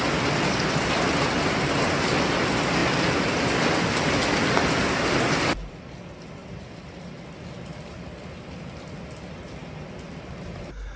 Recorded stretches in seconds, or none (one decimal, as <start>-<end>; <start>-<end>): 0.0-2.8; 5.7-6.4; 7.2-11.0